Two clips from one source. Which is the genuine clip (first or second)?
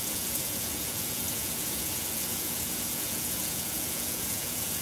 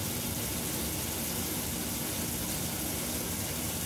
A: second